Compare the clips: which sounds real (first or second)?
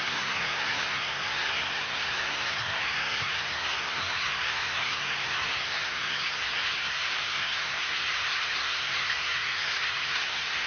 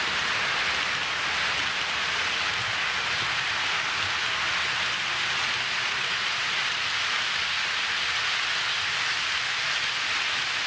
second